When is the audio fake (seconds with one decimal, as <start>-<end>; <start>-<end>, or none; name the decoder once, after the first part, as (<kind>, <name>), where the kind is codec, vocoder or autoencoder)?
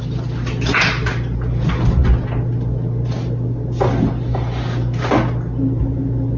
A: none